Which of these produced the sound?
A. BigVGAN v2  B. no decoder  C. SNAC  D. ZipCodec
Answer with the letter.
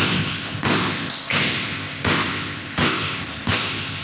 D